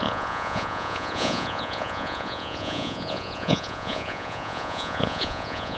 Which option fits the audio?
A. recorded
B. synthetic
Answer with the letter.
B